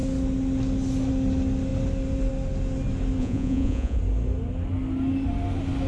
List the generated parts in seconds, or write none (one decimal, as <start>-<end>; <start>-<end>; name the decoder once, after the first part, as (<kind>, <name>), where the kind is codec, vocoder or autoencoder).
3.2-4.0 (vocoder, Vocos)